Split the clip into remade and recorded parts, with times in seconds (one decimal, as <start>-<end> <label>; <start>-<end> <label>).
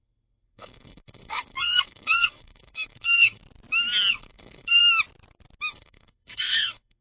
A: 0.0-3.4 remade; 3.4-4.1 recorded; 4.1-4.8 remade; 4.8-5.7 recorded; 5.7-7.0 remade